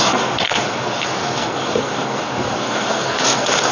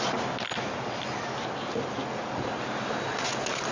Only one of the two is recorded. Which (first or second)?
second